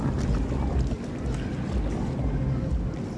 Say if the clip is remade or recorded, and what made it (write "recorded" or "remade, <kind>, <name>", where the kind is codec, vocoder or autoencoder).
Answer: recorded